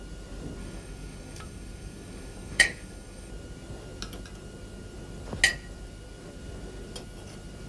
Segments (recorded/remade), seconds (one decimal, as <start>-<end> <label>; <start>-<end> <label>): 0.0-0.6 recorded; 0.6-3.3 remade; 3.3-7.7 recorded